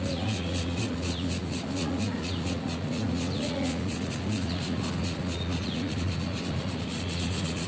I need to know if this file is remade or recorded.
remade